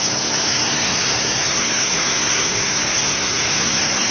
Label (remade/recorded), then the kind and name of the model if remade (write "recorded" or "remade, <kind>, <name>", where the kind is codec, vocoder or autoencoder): remade, codec, SNAC